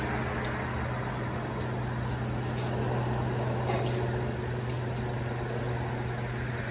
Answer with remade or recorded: recorded